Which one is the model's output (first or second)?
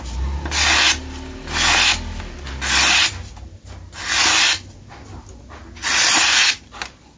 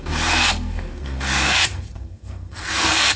second